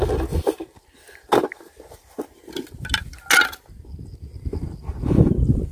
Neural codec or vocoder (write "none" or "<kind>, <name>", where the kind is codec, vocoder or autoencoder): none